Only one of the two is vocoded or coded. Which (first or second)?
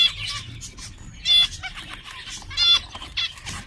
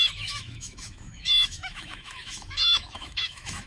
second